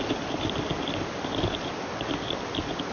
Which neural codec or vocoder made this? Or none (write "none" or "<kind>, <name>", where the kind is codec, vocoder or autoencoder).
none